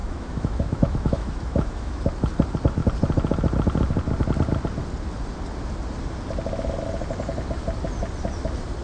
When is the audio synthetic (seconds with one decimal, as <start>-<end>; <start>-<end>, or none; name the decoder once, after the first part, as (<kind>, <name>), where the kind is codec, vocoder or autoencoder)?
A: 0.0-2.0 (autoencoder, DAC-VAE)